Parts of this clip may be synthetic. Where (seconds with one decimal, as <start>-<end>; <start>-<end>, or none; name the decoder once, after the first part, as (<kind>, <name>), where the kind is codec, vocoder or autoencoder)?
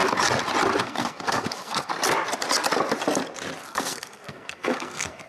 0.8-1.9 (codec, SNAC); 3.6-5.3